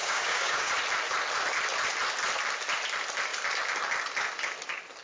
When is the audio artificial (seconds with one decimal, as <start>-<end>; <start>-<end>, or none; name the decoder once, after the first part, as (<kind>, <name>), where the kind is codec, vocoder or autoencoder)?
0.0-0.7 (codec, DAC)